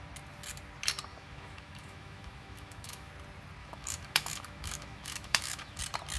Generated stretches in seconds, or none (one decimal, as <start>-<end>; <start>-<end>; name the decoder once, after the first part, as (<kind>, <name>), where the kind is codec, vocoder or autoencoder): 1.1-3.1 (autoencoder, DAC-VAE); 3.6-5.8